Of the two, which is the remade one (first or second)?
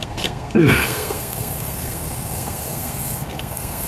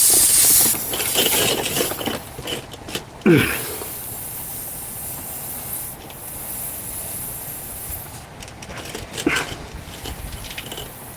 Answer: first